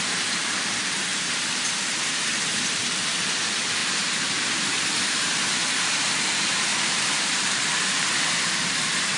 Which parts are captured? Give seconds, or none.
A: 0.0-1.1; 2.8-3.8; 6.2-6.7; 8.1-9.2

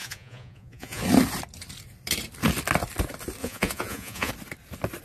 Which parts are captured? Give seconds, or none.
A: 1.0-3.4; 4.3-5.0

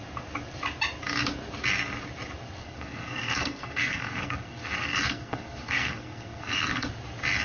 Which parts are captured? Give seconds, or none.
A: 0.0-2.6; 6.9-7.4

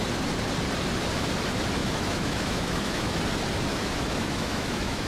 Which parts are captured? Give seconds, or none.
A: 0.0-1.8; 3.2-3.7

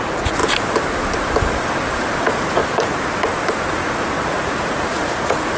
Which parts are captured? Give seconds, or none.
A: 0.4-2.2; 2.6-3.7

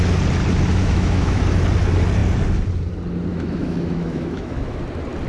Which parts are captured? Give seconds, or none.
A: 0.0-0.8; 1.4-3.3; 4.8-5.3

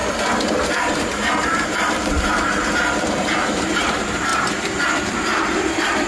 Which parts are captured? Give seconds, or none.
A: 4.3-5.0

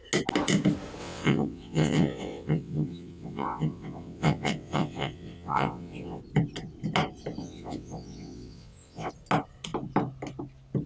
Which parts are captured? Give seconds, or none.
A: 0.0-1.0; 6.2-7.4; 9.1-10.9